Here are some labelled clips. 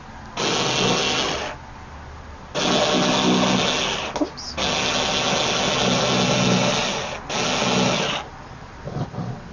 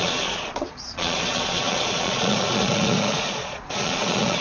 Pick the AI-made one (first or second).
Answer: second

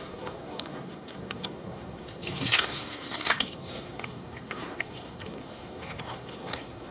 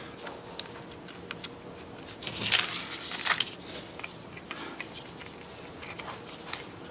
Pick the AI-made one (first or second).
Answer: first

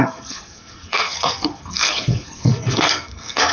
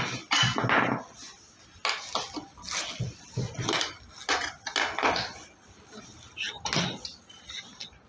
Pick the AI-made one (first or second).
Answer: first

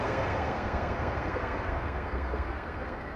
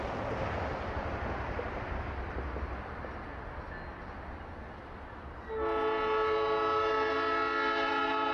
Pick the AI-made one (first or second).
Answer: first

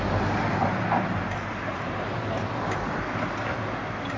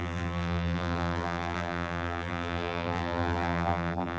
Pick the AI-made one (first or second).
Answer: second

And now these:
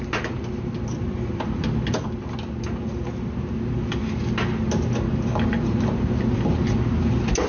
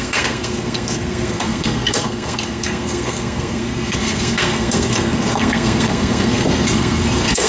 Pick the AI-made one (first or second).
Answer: second